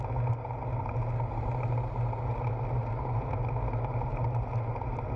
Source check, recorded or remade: recorded